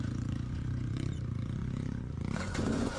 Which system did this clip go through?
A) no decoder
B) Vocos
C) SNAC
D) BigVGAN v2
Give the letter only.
B